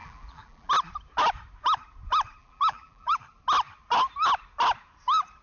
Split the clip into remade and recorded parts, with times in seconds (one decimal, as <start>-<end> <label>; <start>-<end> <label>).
0.0-0.7 remade; 0.7-2.4 recorded; 2.4-3.2 remade; 3.2-5.4 recorded